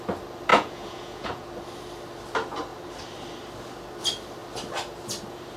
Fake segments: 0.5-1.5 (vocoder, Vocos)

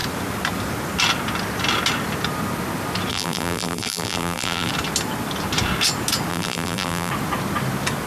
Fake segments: 3.1-4.7 (vocoder, BigVGAN v2); 6.3-7.1

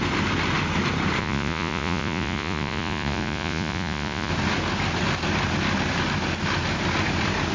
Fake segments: 1.2-4.3 (vocoder, Vocos)